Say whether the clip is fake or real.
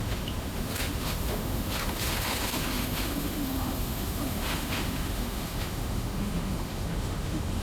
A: fake